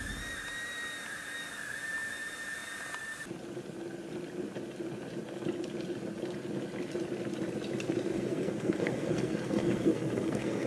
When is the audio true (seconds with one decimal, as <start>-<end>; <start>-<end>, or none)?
0.0-8.1

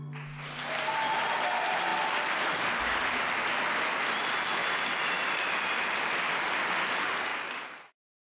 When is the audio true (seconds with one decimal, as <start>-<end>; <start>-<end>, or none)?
0.0-8.3